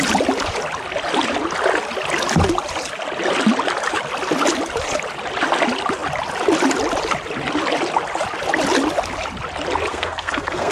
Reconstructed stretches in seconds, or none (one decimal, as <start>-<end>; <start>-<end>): 9.9-10.7